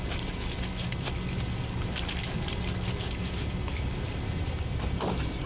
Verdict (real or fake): real